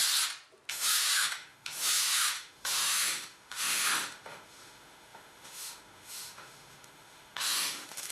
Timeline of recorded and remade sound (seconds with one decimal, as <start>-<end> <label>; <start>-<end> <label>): 0.0-0.7 recorded; 0.7-8.1 remade

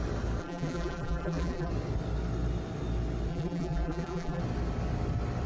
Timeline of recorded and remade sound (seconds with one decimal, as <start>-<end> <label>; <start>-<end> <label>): 0.0-0.4 recorded; 0.4-1.7 remade; 1.7-3.3 recorded; 3.3-4.4 remade; 4.4-5.5 recorded

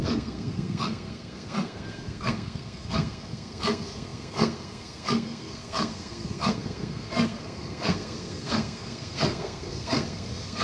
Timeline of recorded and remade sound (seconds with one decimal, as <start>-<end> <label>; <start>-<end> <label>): 0.0-10.6 remade

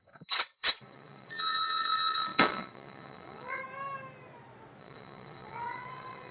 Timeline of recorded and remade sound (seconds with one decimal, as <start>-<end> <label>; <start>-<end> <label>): 0.0-3.6 remade; 3.6-4.8 recorded; 4.8-6.3 remade

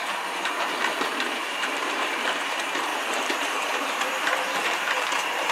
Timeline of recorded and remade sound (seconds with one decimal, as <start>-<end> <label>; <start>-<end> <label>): 0.0-5.5 remade

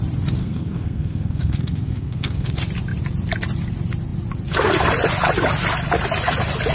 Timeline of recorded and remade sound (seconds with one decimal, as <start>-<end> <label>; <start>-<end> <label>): 0.0-0.4 recorded; 0.4-2.5 remade; 2.5-6.7 recorded